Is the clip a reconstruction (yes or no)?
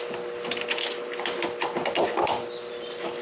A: no